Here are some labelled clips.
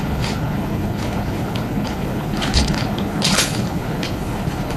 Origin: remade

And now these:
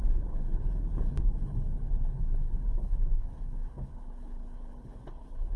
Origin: remade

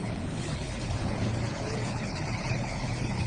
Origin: remade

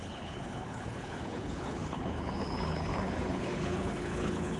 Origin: remade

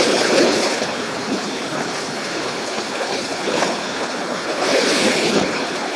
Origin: remade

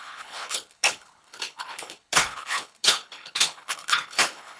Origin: remade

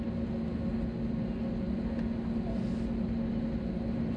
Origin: recorded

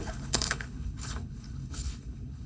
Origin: remade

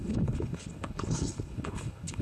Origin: remade